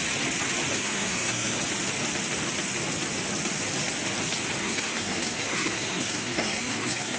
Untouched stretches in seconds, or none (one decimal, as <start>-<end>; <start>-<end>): 0.0-0.7; 1.6-4.6